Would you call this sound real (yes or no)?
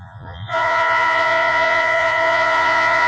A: no